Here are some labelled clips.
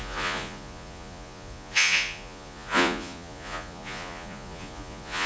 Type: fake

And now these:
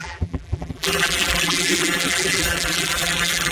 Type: fake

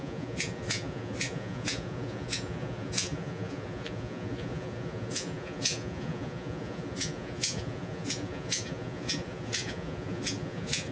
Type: fake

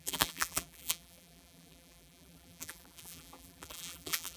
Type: fake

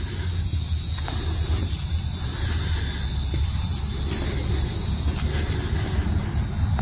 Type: real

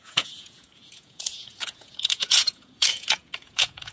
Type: fake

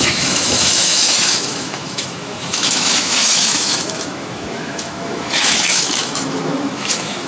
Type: fake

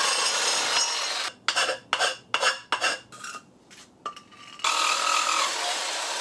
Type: real